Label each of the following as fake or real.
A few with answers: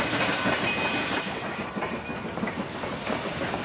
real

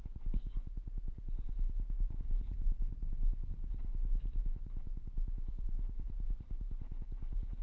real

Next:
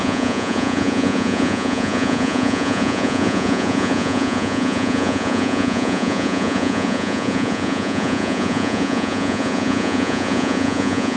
fake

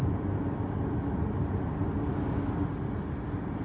real